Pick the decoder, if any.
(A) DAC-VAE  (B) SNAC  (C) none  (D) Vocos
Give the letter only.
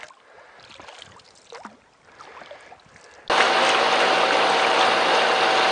C